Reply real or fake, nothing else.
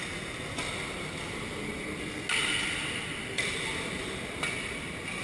real